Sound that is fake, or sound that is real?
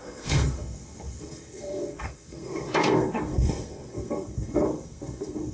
fake